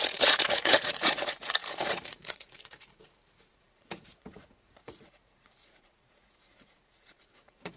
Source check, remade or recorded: remade